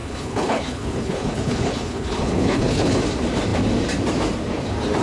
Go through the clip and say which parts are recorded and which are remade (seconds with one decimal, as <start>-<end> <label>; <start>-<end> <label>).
0.0-3.0 remade; 3.0-5.0 recorded